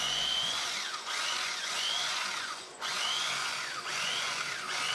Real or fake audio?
fake